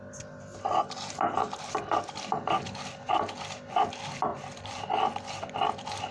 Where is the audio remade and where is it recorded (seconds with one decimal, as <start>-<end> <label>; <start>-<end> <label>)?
0.0-4.3 recorded; 4.3-4.9 remade; 4.9-6.1 recorded

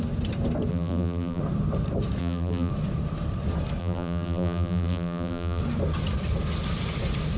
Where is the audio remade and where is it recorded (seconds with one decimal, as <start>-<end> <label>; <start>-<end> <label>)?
0.0-0.7 recorded; 0.7-1.4 remade; 1.4-2.2 recorded; 2.2-2.7 remade; 2.7-3.8 recorded; 3.8-5.6 remade; 5.6-7.4 recorded

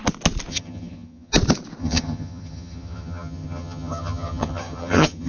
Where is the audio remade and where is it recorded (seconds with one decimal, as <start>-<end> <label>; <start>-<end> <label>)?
0.0-0.5 recorded; 0.5-1.3 remade; 1.3-1.8 recorded; 1.8-5.3 remade

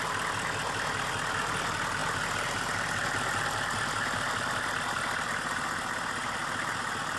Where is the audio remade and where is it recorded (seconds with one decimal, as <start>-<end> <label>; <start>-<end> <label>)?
0.0-7.2 recorded

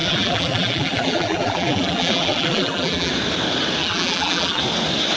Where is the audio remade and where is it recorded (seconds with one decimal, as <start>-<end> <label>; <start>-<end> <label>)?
0.0-3.1 remade; 3.1-3.8 recorded; 3.8-4.6 remade; 4.6-5.2 recorded